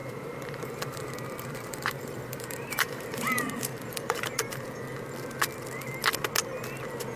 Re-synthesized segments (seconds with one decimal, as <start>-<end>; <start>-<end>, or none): 0.0-4.3